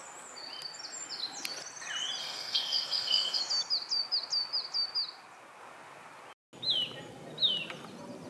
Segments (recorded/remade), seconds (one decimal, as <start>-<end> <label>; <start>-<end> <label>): 0.0-2.2 recorded; 2.2-3.4 remade; 3.4-8.3 recorded